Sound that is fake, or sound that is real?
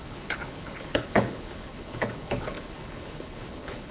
fake